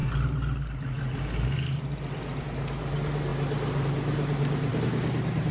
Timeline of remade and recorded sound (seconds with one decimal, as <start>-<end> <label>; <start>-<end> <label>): 0.0-5.5 recorded